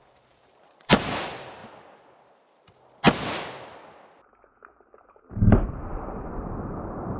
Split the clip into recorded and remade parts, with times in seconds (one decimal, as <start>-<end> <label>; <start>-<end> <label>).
0.0-1.6 remade; 1.6-5.9 recorded; 5.9-7.2 remade